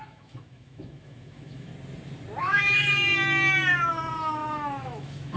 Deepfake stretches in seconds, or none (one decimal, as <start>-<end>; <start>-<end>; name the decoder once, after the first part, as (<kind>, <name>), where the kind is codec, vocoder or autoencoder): 0.0-1.7 (autoencoder, DAC-VAE); 2.4-3.1; 3.9-5.4